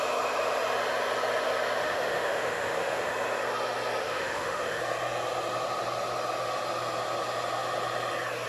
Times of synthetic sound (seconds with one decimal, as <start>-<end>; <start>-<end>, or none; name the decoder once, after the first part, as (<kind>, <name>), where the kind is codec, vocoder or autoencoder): 1.8-3.1 (autoencoder, DAC-VAE); 4.0-4.8